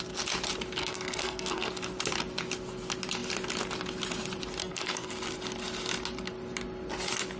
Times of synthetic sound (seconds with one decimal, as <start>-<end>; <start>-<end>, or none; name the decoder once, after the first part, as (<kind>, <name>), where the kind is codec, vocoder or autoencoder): 0.8-1.7 (codec, SNAC); 4.6-5.1